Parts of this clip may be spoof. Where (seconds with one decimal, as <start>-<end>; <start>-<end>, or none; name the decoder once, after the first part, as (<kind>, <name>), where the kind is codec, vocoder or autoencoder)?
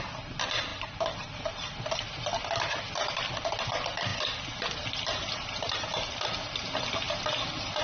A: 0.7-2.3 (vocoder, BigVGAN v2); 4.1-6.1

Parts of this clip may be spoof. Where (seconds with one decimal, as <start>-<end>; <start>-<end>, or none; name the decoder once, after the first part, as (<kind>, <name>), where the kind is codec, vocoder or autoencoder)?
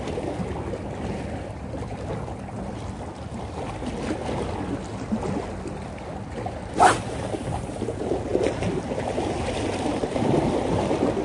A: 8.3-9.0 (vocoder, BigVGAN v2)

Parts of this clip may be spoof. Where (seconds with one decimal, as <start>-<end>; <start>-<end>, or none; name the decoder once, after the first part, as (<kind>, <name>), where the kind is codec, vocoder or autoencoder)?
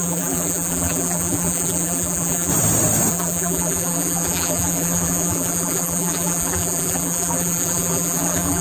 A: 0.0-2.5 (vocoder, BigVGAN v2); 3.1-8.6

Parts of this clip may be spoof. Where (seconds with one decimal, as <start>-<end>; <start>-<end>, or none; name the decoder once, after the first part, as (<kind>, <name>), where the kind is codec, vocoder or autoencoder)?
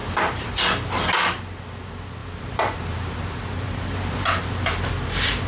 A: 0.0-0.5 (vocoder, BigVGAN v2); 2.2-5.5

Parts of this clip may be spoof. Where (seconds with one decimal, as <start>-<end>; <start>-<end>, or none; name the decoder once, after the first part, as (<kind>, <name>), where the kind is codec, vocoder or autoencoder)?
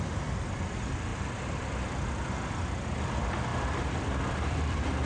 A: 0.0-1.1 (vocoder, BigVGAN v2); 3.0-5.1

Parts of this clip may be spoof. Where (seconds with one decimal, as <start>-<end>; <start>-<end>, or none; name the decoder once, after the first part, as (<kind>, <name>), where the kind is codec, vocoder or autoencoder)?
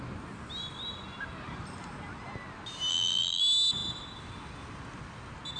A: 2.9-3.4 (vocoder, BigVGAN v2)